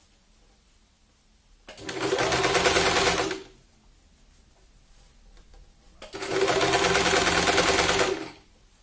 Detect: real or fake real